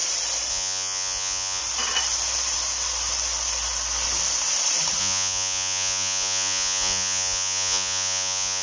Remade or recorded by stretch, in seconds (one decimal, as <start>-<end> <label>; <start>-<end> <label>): 0.0-0.5 recorded; 0.5-1.6 remade; 1.6-5.0 recorded; 5.0-8.6 remade